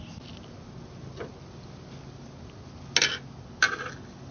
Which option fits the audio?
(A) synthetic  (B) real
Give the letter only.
B